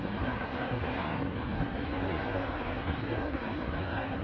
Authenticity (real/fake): fake